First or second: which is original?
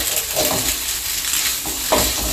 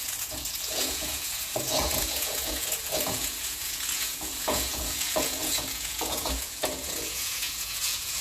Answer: first